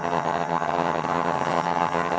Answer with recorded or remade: remade